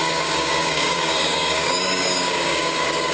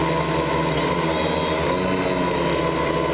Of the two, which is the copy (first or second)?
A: first